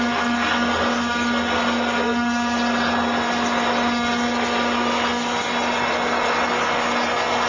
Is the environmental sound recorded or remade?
recorded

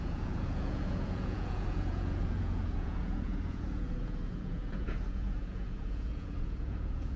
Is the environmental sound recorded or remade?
remade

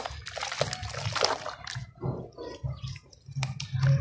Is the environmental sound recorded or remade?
recorded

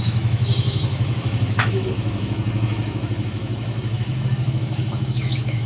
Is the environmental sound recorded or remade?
remade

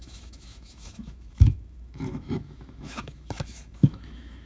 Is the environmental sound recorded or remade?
remade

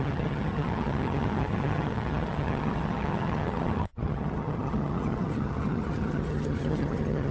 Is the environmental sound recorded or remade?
remade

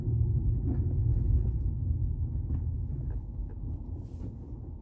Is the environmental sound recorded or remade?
recorded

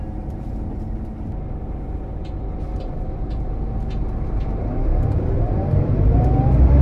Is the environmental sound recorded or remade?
remade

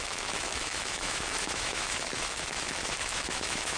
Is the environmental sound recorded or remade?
remade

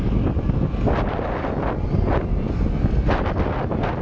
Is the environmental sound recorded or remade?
recorded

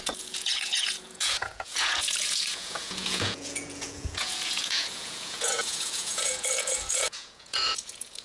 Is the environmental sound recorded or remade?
remade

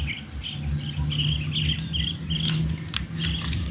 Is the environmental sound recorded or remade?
recorded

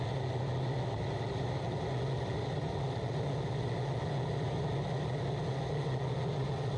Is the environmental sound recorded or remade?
recorded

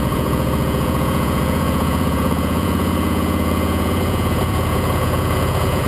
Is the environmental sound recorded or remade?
remade